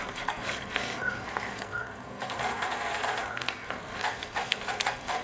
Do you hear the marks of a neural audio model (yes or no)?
yes